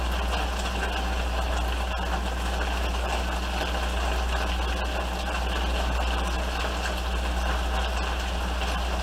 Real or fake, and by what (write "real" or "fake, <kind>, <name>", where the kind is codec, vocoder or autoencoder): real